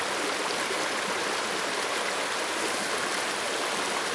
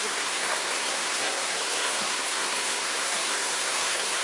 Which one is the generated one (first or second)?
second